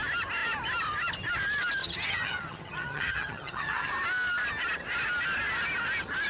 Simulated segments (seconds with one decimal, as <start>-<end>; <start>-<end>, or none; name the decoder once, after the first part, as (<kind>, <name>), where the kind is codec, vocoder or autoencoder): 1.8-3.9 (vocoder, HiFi-GAN)